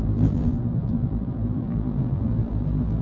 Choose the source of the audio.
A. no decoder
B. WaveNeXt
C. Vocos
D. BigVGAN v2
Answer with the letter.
D